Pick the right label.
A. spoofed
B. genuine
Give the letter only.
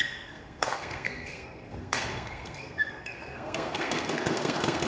A